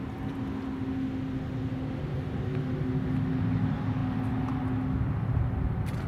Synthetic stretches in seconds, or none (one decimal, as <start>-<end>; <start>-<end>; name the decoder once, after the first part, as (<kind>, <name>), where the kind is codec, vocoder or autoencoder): none